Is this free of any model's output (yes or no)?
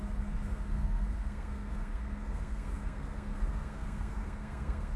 no